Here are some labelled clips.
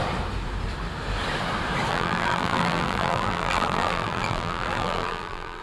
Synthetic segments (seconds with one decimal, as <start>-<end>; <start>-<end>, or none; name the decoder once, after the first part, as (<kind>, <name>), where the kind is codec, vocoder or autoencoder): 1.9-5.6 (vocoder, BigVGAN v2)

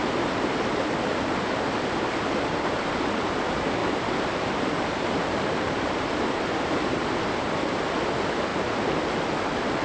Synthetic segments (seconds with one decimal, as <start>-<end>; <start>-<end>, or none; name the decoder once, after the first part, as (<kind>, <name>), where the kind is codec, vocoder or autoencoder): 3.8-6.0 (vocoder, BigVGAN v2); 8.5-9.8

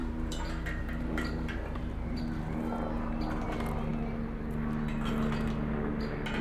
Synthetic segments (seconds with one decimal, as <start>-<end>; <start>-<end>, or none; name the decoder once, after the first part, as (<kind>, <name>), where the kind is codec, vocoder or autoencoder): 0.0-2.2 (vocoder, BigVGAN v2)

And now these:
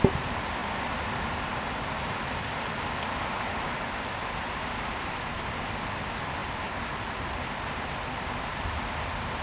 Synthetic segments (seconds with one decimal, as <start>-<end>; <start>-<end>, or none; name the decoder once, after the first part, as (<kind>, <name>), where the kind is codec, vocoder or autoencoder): none